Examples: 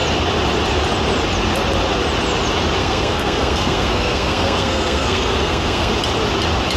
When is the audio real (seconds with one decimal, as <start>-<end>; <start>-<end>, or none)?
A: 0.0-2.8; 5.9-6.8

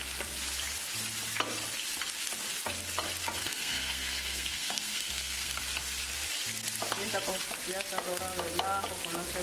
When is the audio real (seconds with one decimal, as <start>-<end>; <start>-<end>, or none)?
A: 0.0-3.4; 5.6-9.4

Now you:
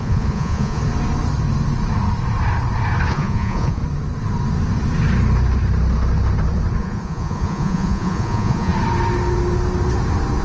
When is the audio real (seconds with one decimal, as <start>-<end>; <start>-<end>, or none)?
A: 0.8-3.1; 3.8-6.8; 8.7-10.4

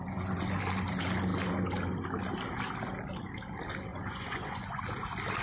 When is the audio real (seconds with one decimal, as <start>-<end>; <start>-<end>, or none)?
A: 0.0-3.9; 4.8-5.4

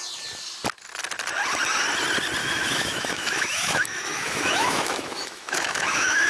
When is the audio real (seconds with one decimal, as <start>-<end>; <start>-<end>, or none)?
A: 0.0-2.4